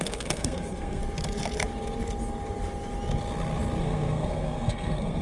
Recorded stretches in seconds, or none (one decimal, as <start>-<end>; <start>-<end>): 1.0-3.8